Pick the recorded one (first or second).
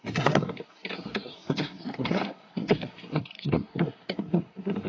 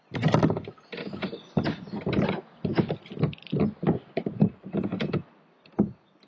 second